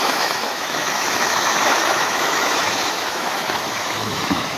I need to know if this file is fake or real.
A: fake